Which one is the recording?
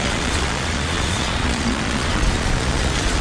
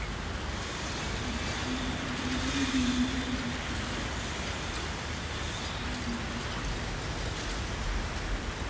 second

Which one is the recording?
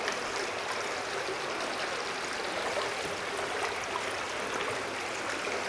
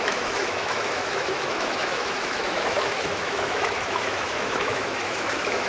first